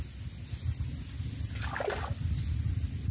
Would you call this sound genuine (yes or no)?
yes